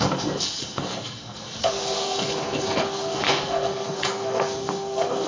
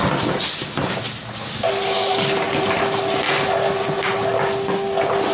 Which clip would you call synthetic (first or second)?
first